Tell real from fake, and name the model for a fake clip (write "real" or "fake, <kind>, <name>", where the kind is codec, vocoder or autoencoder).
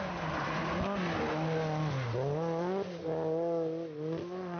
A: real